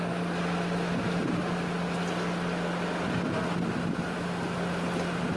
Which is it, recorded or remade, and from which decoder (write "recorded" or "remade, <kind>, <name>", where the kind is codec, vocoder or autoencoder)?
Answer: recorded